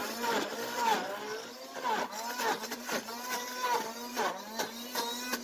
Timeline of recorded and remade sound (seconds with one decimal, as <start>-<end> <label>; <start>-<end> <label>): 0.0-0.5 remade; 0.5-5.4 recorded